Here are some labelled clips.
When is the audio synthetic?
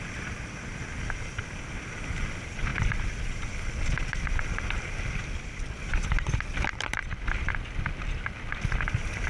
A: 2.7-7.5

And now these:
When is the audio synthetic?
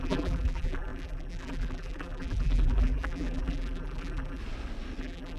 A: 0.0-4.4; 5.0-5.4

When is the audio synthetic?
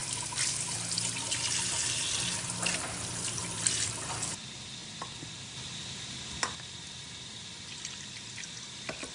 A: none